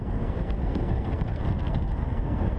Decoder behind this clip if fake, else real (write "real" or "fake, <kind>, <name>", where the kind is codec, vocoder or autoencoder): fake, codec, SNAC